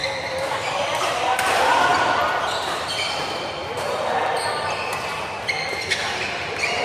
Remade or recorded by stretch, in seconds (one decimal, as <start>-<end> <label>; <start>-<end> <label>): 0.0-6.8 recorded